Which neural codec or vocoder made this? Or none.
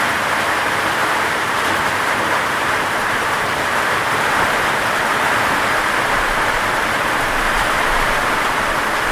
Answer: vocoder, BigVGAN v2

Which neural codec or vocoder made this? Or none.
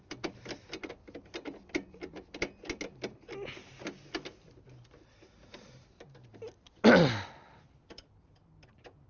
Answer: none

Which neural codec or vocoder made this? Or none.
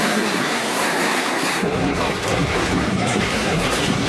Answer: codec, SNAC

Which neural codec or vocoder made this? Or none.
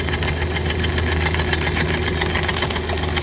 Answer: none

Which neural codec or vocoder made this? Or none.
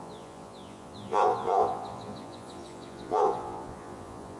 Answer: vocoder, Vocos